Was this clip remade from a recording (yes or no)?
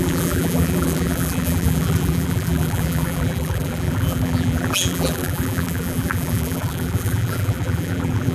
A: yes